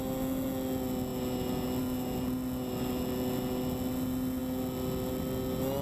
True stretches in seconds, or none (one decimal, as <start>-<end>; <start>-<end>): 0.0-5.8